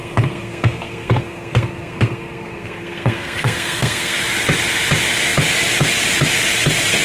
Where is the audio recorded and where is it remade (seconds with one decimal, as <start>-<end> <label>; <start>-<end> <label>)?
0.0-4.2 remade; 4.2-7.0 recorded